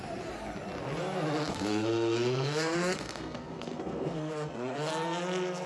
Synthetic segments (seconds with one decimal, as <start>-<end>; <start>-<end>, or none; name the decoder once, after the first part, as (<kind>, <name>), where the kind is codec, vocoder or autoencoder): 1.5-4.9 (codec, SNAC)